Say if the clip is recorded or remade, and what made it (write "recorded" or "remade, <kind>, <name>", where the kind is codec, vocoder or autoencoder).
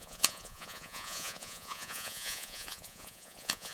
remade, vocoder, Vocos